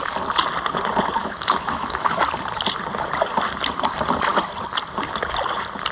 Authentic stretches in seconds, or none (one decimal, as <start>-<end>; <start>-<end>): 0.0-1.2; 2.2-5.9